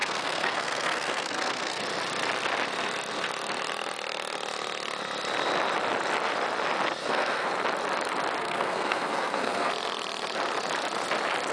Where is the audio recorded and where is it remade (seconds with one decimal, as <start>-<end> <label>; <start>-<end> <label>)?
0.0-1.8 remade; 1.8-7.0 recorded; 7.0-7.5 remade; 7.5-8.4 recorded; 8.4-9.7 remade; 9.7-11.5 recorded